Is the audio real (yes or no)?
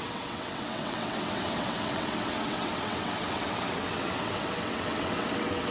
no